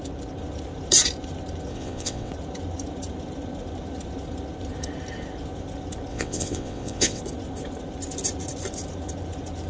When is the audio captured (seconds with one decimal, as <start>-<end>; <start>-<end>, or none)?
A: 0.0-1.7; 2.3-6.1; 7.2-9.7